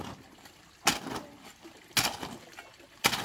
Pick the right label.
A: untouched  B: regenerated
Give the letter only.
A